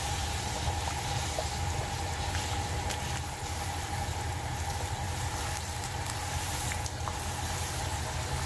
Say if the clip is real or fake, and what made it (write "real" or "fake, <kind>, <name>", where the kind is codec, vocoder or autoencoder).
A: real